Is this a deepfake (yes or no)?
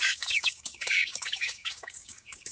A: yes